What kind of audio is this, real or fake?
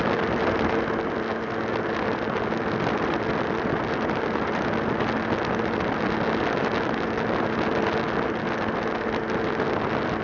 real